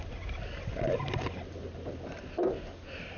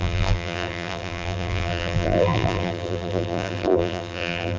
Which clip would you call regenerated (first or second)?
second